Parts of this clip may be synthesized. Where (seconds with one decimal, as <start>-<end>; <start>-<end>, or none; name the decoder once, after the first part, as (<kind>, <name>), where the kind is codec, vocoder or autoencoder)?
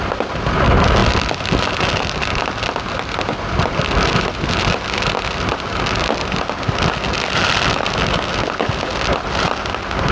none